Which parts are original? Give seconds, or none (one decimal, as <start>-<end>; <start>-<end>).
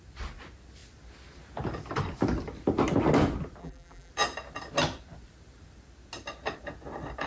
0.0-3.6; 4.1-7.3